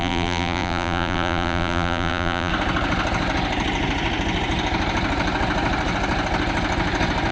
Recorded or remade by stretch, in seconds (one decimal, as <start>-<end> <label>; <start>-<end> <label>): 0.0-2.5 remade; 2.5-7.3 recorded